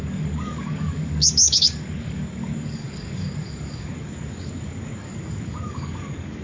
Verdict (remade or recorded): remade